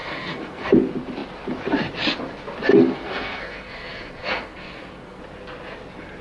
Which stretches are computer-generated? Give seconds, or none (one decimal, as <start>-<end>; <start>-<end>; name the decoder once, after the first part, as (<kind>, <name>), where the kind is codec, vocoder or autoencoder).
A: 0.0-0.7 (codec, SNAC); 2.7-5.2